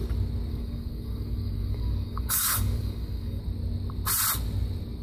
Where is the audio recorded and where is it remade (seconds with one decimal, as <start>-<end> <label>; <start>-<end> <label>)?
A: 0.0-0.5 recorded; 0.5-3.4 remade; 3.4-5.0 recorded